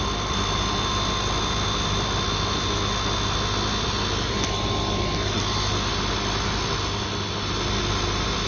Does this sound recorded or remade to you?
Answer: recorded